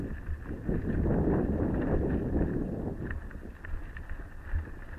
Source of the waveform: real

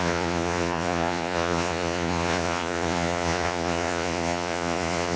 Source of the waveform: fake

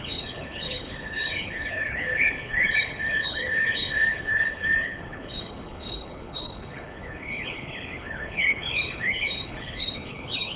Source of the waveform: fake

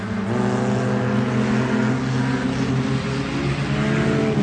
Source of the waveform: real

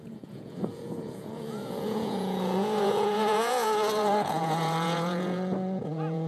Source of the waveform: fake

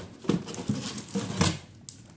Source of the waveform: real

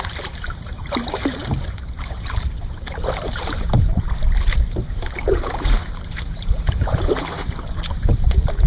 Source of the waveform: fake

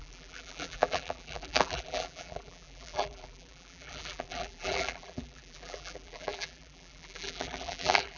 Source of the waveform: fake